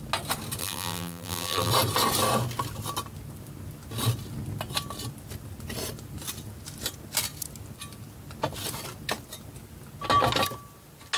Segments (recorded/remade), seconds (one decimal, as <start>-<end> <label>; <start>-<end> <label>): 0.0-0.6 recorded; 0.6-1.7 remade; 1.7-11.2 recorded

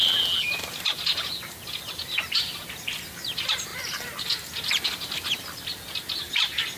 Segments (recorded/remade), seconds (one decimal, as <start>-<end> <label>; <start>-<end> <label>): 0.0-3.7 recorded; 3.7-4.9 remade; 4.9-6.8 recorded

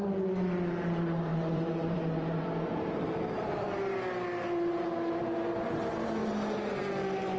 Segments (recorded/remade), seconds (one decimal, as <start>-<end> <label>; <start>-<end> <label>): 0.0-1.3 recorded; 1.3-4.0 remade; 4.0-6.2 recorded; 6.2-6.9 remade; 6.9-7.4 recorded

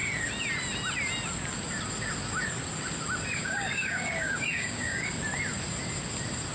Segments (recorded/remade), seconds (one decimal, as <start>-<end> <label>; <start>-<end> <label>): 0.0-3.4 recorded; 3.4-5.1 remade; 5.1-6.5 recorded